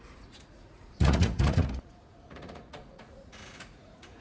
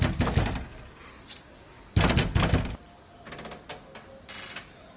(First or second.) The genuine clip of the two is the second